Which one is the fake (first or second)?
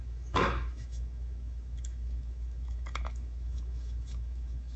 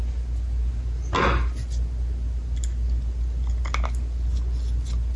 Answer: first